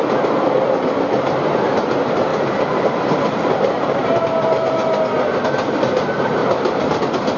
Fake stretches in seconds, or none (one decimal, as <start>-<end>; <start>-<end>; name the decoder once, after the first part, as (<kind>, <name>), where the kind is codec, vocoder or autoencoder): 2.3-4.2 (vocoder, BigVGAN v2); 6.4-7.0